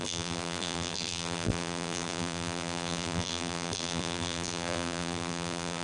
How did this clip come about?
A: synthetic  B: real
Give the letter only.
A